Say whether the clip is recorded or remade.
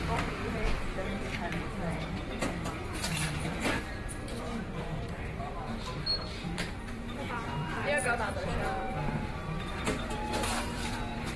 remade